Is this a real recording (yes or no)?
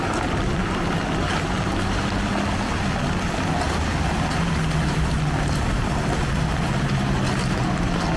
yes